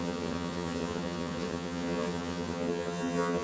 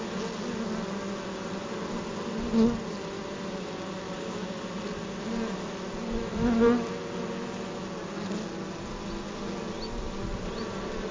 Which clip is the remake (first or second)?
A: first